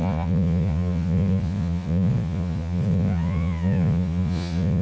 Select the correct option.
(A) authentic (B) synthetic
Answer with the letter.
B